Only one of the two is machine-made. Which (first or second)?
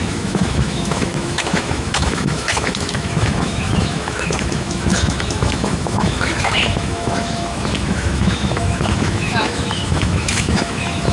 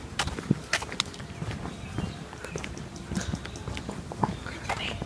first